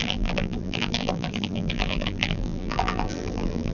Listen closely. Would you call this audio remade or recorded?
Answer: remade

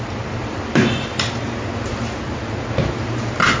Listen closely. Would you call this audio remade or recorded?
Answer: recorded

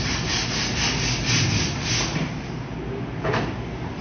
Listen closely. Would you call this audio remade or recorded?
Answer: recorded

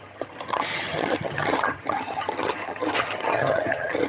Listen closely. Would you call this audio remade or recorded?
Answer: remade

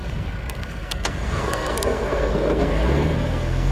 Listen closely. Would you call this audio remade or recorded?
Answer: remade